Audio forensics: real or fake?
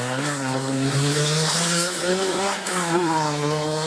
fake